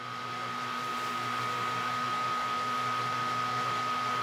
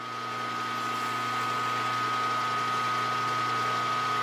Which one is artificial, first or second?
first